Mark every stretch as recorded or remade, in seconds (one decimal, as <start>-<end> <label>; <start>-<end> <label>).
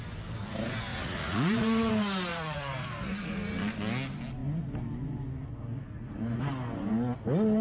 0.0-0.9 recorded; 0.9-1.9 remade; 1.9-2.3 recorded; 2.3-3.3 remade; 3.3-7.6 recorded